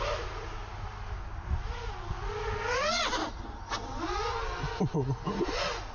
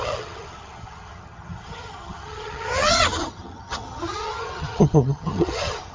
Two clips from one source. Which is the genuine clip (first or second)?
first